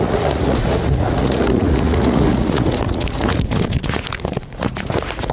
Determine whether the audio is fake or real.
fake